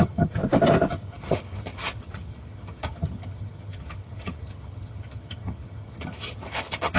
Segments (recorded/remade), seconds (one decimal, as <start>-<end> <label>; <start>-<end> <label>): 0.0-0.4 remade; 0.4-0.9 recorded; 0.9-7.0 remade